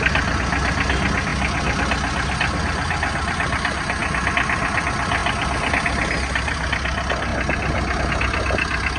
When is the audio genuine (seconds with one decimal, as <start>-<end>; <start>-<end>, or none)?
0.0-9.0